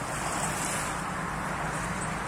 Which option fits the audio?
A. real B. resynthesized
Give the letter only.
A